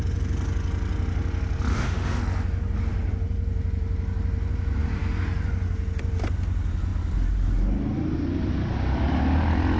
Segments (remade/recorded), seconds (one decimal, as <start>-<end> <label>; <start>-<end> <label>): 0.0-1.7 recorded; 1.7-2.2 remade; 2.2-9.8 recorded